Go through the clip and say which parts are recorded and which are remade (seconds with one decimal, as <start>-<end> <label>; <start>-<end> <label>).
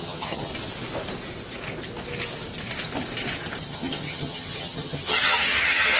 0.0-0.5 remade; 0.5-3.6 recorded; 3.6-6.0 remade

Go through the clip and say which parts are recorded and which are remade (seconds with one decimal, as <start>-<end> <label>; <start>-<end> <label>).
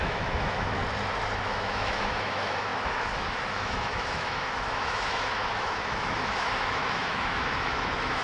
0.0-0.8 remade; 0.8-1.4 recorded; 1.4-8.2 remade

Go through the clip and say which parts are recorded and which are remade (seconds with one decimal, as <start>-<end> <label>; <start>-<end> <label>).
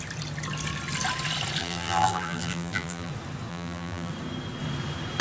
0.0-1.6 recorded; 1.6-3.1 remade; 3.1-3.5 recorded; 3.5-4.1 remade; 4.1-5.2 recorded